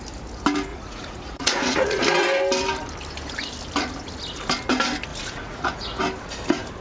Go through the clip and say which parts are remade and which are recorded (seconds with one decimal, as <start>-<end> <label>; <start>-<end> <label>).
0.0-0.7 recorded; 0.7-2.0 remade; 2.0-5.1 recorded; 5.1-6.0 remade; 6.0-6.8 recorded